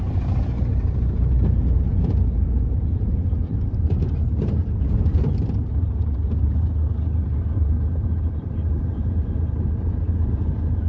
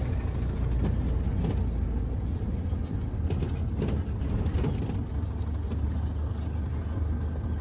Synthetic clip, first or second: first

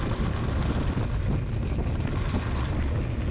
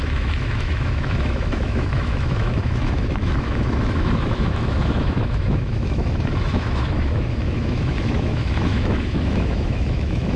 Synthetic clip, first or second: second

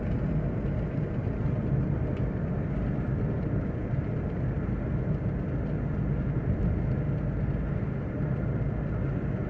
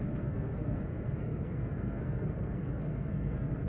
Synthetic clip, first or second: second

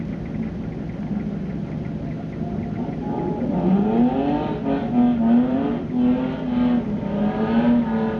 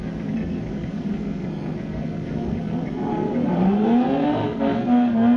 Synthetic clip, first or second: second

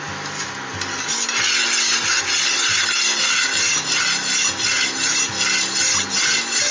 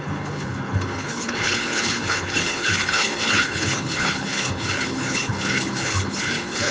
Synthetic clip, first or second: second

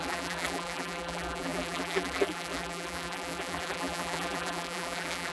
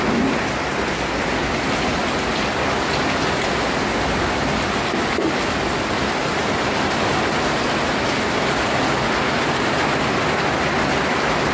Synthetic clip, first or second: first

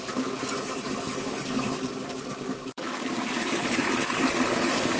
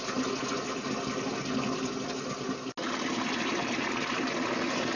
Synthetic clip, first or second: first